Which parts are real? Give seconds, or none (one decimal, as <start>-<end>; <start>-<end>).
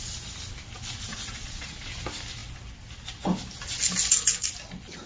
0.0-1.1; 1.9-5.1